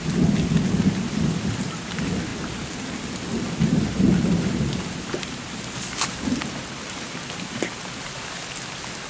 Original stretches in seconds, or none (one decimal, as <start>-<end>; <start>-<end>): 0.0-9.1